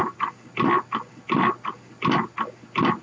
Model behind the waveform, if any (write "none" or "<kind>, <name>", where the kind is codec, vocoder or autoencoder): none